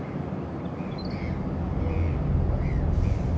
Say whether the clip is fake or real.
real